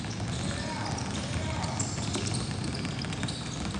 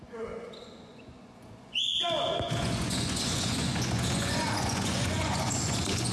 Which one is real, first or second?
first